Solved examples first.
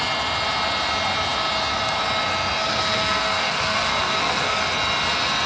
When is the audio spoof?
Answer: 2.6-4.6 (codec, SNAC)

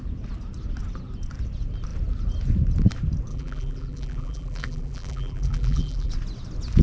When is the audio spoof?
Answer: 3.3-6.1 (vocoder, BigVGAN v2)

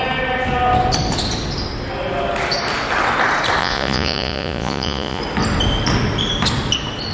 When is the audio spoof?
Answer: 3.6-5.2 (vocoder, Vocos)

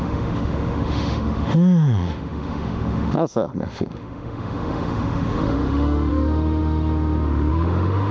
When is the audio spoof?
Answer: 0.0-8.1 (autoencoder, DAC-VAE)

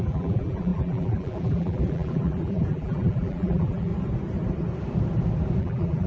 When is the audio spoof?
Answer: 0.0-3.9 (vocoder, BigVGAN v2); 5.6-6.1

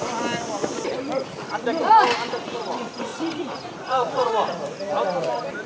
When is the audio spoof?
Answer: 3.1-4.6 (vocoder, Vocos)